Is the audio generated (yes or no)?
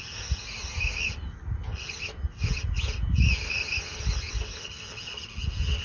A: no